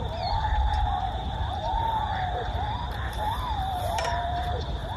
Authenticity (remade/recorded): remade